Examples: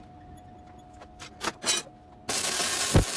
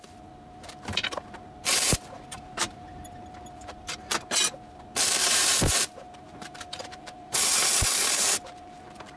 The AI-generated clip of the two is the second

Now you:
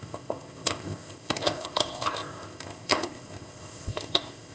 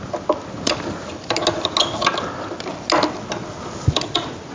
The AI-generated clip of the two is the first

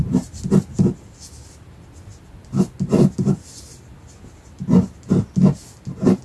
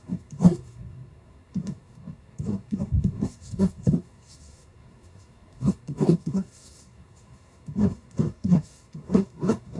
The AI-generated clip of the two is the second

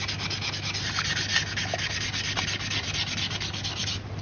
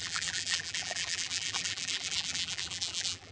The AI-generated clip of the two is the second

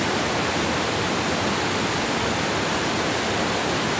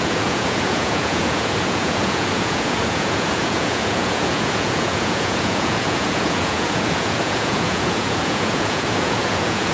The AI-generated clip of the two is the second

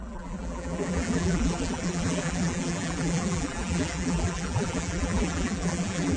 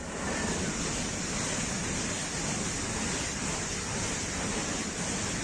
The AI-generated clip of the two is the first